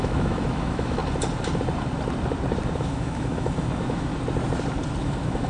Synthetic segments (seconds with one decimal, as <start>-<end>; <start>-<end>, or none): 0.0-1.0; 2.7-4.1; 5.0-5.5